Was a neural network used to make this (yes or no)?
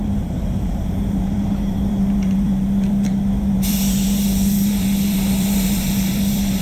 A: yes